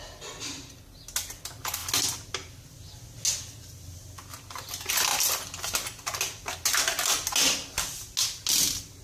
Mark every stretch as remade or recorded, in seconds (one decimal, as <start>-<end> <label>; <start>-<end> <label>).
0.0-9.0 recorded